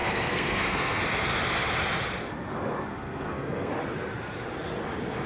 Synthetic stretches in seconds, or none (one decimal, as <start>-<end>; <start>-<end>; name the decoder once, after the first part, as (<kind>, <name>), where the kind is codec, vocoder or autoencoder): 0.0-1.0 (codec, SNAC); 2.9-3.7